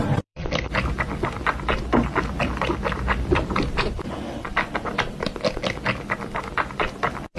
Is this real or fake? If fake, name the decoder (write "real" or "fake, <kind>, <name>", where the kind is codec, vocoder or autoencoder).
fake, vocoder, BigVGAN v2